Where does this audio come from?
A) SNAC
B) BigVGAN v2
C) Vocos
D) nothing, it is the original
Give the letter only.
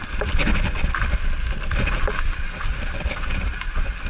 D